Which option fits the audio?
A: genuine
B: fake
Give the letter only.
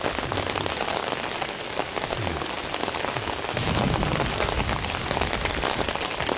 A